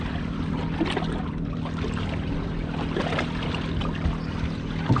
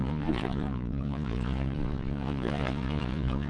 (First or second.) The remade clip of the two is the second